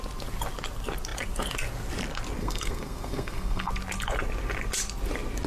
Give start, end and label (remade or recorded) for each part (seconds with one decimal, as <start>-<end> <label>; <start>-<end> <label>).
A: 0.0-2.4 recorded; 2.4-3.7 remade; 3.7-5.5 recorded